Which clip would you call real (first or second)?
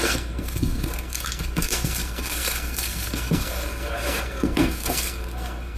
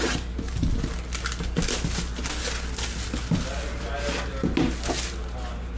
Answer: second